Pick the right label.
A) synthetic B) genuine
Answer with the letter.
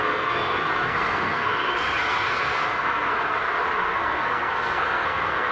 A